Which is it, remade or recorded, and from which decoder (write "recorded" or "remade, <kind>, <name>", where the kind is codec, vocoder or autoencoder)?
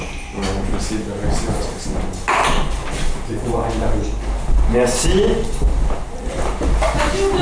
recorded